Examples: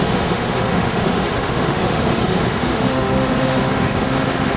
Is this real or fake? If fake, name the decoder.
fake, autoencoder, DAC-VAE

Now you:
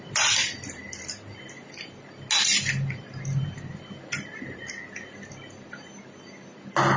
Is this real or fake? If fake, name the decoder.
real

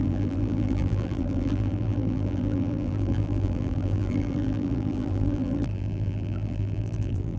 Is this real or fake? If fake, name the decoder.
fake, vocoder, BigVGAN v2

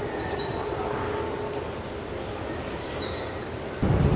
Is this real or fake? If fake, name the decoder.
real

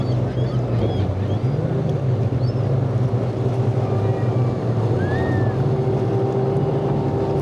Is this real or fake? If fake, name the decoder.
real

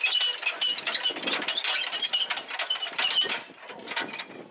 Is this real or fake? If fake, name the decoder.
real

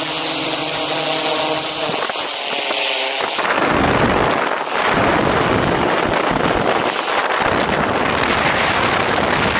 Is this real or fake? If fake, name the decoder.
real